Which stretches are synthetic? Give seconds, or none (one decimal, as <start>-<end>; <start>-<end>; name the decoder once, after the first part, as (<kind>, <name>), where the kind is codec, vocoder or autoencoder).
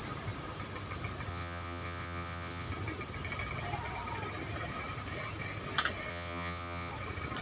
1.3-2.7 (vocoder, WaveNeXt); 6.1-6.9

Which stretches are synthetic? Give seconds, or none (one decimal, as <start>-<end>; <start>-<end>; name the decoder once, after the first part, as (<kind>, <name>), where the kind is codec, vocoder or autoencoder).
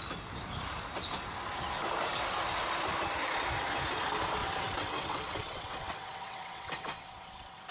4.4-7.7 (vocoder, WaveNeXt)